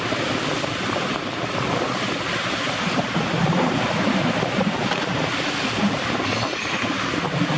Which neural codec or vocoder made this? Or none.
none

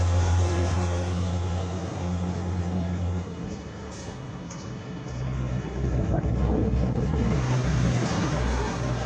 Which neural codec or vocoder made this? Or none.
codec, SNAC